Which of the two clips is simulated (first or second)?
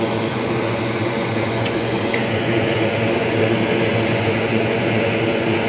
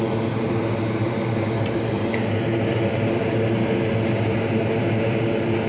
first